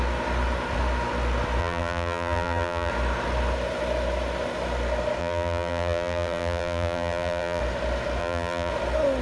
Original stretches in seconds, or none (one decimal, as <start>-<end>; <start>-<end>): 0.0-1.6; 2.9-5.2; 7.6-8.2; 8.7-9.2